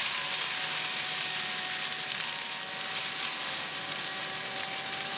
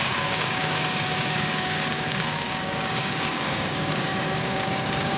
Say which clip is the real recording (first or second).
first